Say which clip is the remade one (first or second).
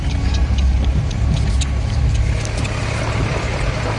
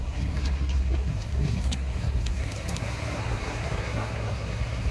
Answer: second